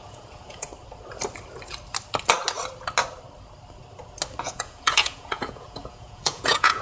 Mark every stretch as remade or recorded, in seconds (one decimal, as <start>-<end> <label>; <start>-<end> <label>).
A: 0.0-0.7 remade; 0.7-4.4 recorded; 4.4-6.8 remade

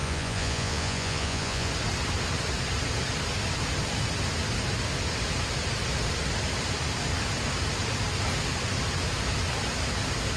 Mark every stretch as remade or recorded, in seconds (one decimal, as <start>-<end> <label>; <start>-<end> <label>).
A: 0.0-1.7 remade; 1.7-10.4 recorded

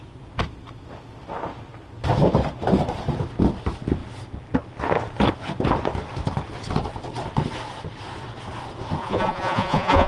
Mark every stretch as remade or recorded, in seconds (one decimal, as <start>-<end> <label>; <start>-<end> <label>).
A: 0.0-9.0 recorded; 9.0-10.1 remade

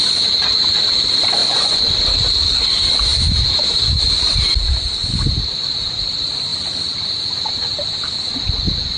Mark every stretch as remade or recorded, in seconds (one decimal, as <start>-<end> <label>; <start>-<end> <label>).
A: 0.0-1.4 recorded; 1.4-1.9 remade; 1.9-9.0 recorded

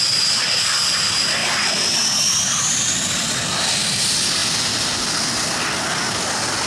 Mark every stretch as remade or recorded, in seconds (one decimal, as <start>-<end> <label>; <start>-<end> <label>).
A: 0.0-6.7 recorded

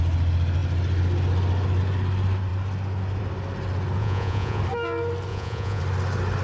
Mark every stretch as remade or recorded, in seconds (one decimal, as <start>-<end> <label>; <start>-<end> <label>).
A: 0.0-4.0 recorded; 4.0-4.6 remade; 4.6-5.3 recorded; 5.3-5.8 remade; 5.8-6.4 recorded

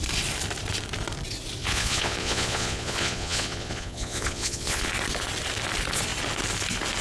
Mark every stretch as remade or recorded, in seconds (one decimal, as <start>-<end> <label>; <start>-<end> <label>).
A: 0.0-1.6 recorded; 1.6-4.9 remade; 4.9-7.0 recorded

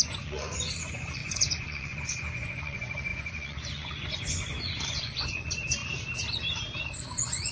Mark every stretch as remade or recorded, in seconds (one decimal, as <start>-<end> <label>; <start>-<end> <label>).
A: 0.0-5.8 remade; 5.8-6.8 recorded; 6.8-7.5 remade